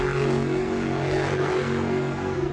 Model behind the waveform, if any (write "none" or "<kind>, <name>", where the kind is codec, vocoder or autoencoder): codec, SNAC